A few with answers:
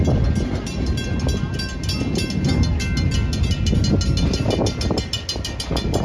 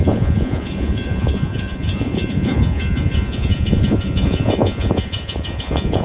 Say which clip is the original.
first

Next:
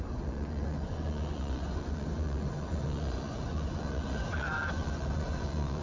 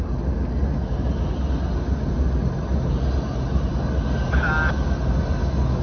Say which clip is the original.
second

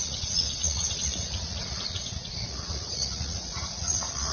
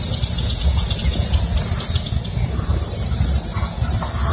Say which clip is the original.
second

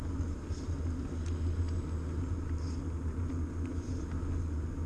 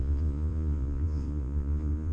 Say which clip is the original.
first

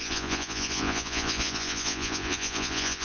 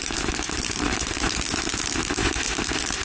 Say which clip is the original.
second